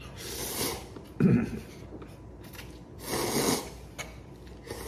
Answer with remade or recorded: recorded